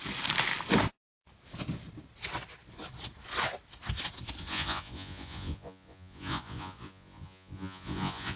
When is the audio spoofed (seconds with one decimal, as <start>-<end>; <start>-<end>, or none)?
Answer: 4.4-8.4